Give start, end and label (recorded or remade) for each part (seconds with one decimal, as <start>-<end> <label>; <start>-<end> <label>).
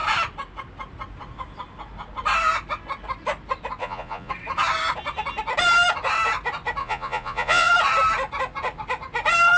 0.0-3.8 recorded; 3.8-4.3 remade; 4.3-6.8 recorded; 6.8-7.7 remade; 7.7-9.6 recorded